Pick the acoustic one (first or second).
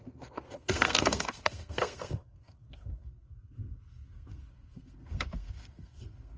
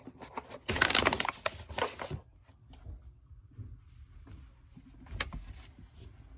second